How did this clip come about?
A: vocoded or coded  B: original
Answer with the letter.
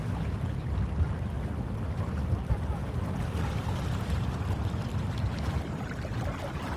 B